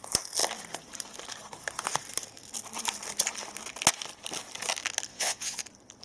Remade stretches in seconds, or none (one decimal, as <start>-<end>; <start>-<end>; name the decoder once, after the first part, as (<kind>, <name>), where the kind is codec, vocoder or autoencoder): 5.1-5.6 (vocoder, WaveNeXt)